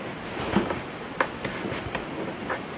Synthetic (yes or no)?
no